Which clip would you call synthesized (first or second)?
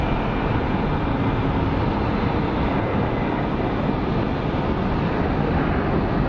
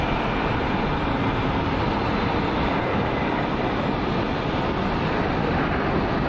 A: second